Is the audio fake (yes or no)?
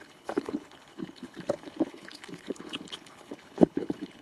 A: yes